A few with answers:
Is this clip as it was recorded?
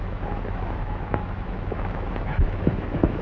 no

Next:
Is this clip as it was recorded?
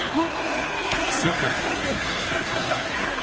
no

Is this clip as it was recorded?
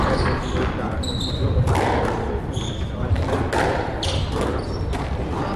no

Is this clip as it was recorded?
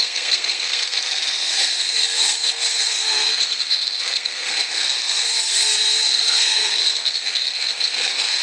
no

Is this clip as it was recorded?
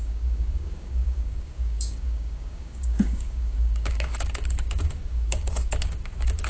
no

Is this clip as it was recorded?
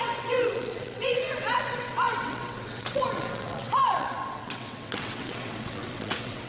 no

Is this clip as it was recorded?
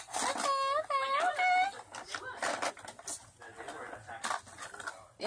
yes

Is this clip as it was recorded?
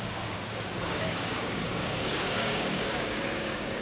no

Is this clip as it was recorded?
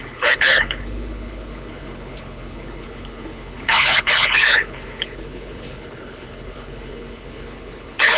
no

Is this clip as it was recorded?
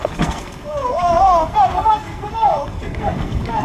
no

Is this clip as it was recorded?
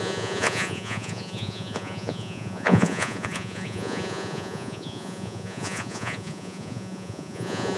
no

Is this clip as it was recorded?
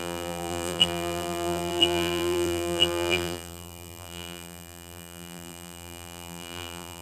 no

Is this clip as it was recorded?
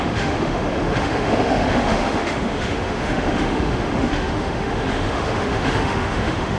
no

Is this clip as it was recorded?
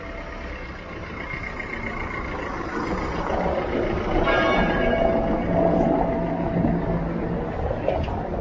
yes